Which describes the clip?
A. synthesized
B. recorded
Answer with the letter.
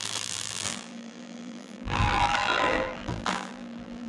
A